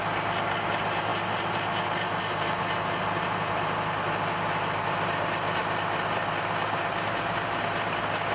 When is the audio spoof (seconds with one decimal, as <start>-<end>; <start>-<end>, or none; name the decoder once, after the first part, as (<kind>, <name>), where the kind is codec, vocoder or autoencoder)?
none